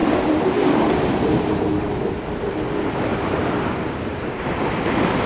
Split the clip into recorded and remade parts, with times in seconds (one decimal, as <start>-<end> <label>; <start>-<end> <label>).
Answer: 0.0-1.6 remade; 1.6-3.1 recorded; 3.1-4.6 remade; 4.6-5.3 recorded